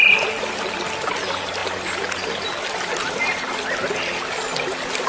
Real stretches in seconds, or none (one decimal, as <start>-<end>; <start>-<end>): 0.0-5.1